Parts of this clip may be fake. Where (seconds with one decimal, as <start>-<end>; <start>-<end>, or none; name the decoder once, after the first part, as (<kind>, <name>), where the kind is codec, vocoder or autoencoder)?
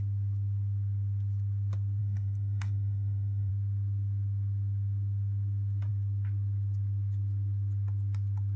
2.0-3.5 (codec, SNAC)